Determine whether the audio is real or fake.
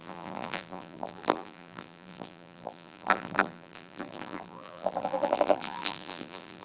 fake